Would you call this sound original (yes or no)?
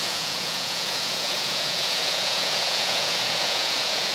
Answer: no